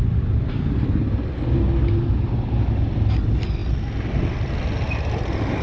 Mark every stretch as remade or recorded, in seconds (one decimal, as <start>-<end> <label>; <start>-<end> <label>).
0.0-5.6 recorded